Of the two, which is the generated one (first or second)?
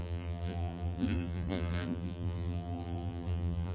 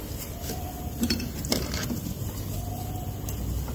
first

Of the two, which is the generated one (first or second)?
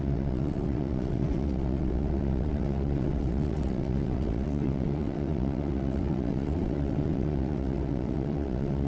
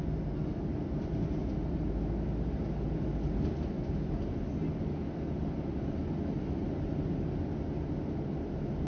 first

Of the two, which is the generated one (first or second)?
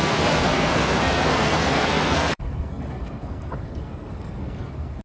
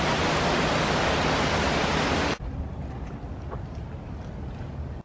first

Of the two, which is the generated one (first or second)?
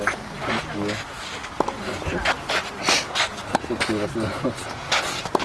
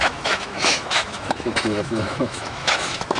second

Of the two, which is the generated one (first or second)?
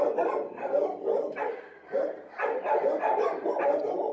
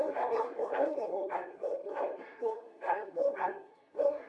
second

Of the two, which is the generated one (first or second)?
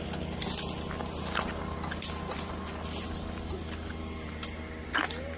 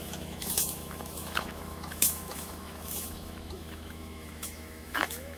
second